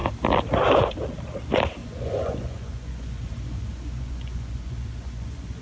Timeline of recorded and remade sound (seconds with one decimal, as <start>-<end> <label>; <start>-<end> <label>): 0.0-1.8 recorded; 1.8-5.6 remade